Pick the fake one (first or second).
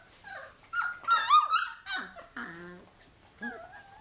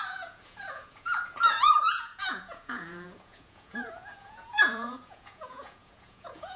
second